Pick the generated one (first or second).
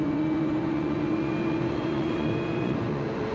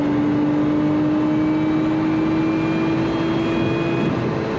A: first